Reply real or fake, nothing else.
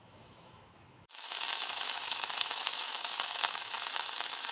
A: fake